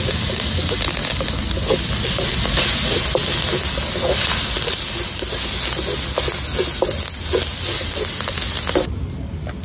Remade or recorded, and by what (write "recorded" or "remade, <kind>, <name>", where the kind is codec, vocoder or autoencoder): recorded